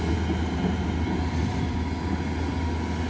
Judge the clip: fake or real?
real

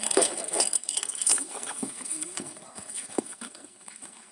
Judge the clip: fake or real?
fake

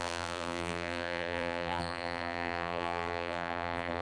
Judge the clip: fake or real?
fake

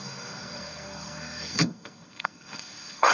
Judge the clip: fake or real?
fake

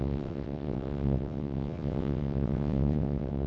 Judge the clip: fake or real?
fake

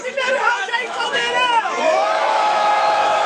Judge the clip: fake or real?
fake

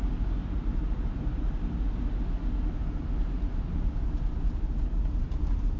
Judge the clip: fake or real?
real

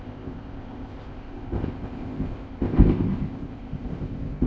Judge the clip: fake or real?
fake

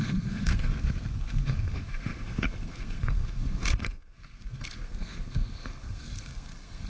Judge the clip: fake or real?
fake